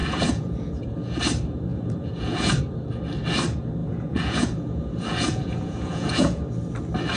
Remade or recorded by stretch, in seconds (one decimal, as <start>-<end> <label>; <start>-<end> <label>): 0.0-1.2 remade; 1.2-1.7 recorded; 1.7-2.6 remade; 2.6-3.8 recorded; 3.8-6.4 remade; 6.4-7.2 recorded